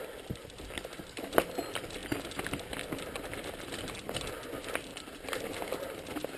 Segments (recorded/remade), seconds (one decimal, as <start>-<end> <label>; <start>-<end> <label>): 0.0-4.9 recorded; 4.9-5.6 remade; 5.6-6.4 recorded